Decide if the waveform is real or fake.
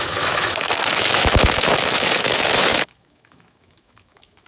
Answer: fake